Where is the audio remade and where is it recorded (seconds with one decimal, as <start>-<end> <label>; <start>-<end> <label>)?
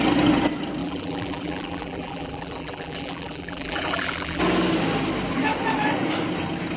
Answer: 0.0-0.8 recorded; 0.8-4.4 remade; 4.4-6.8 recorded